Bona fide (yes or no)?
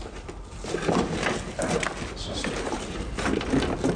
yes